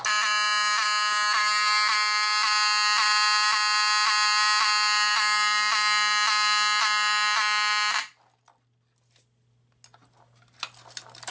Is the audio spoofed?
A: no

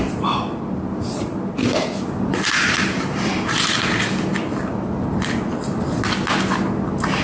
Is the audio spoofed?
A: no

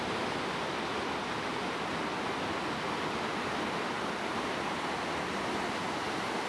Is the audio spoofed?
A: no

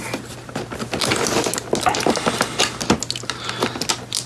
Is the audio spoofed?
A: no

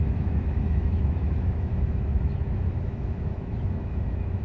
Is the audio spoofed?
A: yes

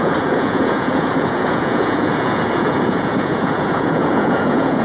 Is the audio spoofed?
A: yes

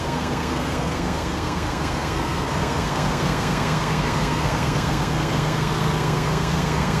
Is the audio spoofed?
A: yes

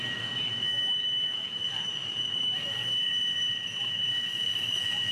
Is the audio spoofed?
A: yes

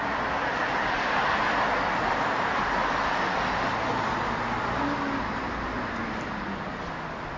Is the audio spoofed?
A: no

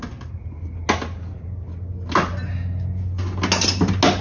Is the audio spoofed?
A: no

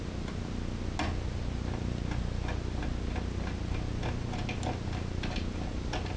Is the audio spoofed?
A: no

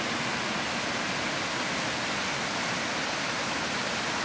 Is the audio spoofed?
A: no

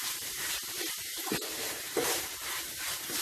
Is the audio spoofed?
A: yes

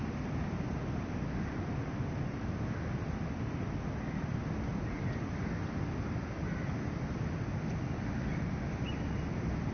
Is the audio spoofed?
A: no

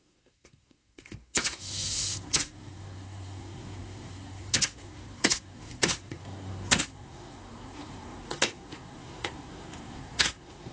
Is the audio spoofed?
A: yes